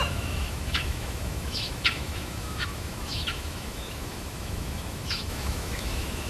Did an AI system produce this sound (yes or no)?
yes